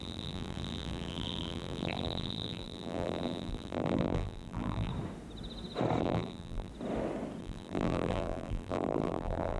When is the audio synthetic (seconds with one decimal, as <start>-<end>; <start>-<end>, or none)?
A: 0.0-4.9; 6.0-6.7; 7.4-9.6